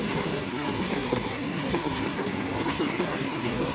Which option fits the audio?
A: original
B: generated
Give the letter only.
B